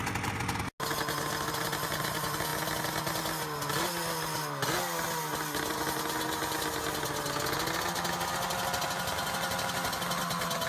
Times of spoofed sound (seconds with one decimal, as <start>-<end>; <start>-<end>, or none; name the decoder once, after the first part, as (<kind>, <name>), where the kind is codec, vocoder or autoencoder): none